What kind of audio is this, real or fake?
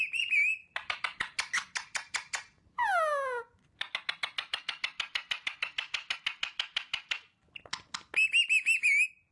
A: real